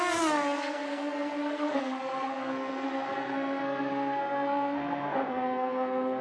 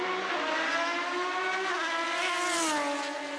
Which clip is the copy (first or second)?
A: first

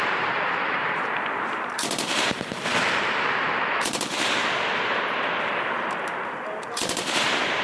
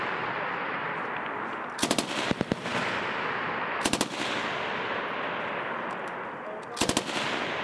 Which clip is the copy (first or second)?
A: first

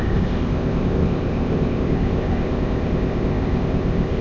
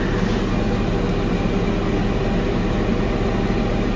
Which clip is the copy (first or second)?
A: first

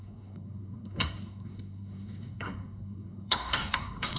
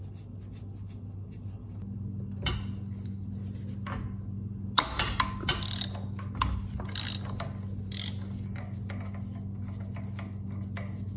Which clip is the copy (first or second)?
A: first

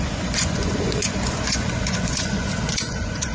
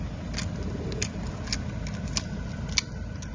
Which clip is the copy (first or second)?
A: first